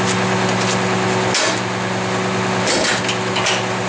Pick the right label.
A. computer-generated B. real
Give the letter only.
B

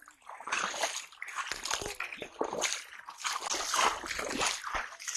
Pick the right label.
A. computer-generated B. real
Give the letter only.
B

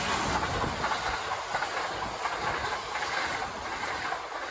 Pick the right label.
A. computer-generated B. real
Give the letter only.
B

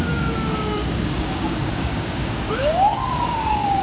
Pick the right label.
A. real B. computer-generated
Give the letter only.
B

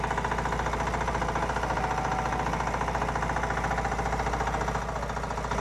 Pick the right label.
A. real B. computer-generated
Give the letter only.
A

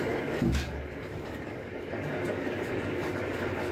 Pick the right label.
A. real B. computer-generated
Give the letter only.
B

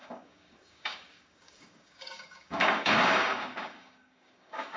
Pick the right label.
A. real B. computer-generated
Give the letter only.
B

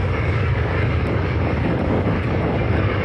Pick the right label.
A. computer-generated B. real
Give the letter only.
A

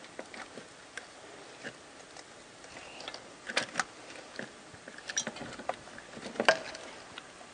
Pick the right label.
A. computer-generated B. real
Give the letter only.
B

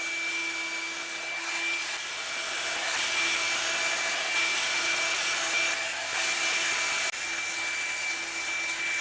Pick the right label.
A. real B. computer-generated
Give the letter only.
A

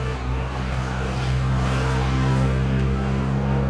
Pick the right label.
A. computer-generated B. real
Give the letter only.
A